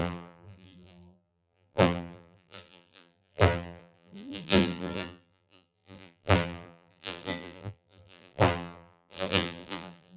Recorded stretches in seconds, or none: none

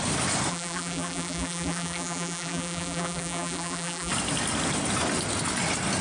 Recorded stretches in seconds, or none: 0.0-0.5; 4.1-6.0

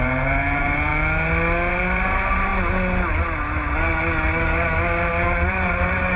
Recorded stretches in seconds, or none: 0.9-1.7; 2.5-5.5

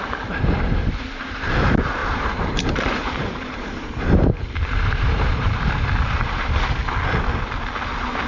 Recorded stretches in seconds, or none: 6.8-8.3

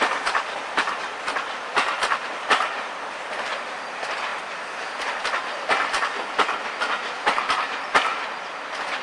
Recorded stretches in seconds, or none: none

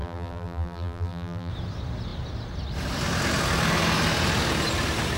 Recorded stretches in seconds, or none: 1.5-5.2

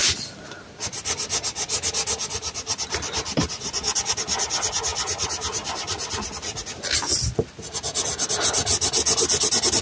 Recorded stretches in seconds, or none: 0.0-4.9; 6.3-9.8

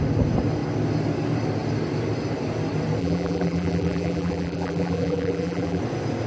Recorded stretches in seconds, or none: 0.0-3.0; 5.8-6.3